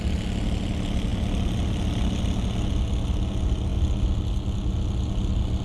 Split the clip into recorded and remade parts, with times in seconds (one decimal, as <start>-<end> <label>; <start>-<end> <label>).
0.0-1.1 recorded; 1.1-2.2 remade; 2.2-5.6 recorded